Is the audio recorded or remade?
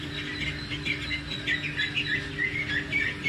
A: recorded